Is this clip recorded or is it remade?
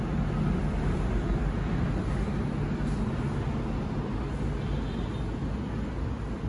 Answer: recorded